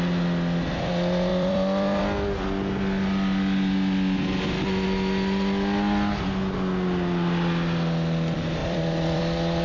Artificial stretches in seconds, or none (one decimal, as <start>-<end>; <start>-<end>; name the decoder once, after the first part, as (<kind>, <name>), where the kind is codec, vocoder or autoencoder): 1.3-2.0 (vocoder, BigVGAN v2); 8.6-9.2